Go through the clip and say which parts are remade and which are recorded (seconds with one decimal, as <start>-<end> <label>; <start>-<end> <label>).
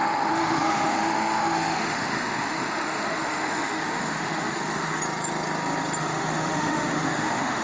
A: 0.0-5.0 remade; 5.0-6.0 recorded; 6.0-7.6 remade